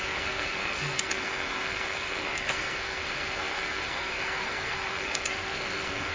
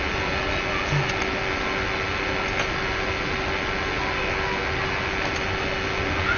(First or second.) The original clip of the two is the second